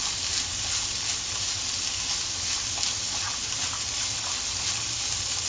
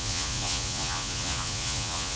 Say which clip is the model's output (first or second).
second